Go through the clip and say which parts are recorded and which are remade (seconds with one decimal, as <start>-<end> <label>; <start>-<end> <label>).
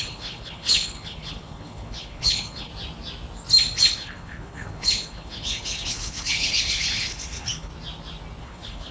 0.0-2.7 remade; 2.7-3.9 recorded; 3.9-7.7 remade; 7.7-8.4 recorded; 8.4-8.9 remade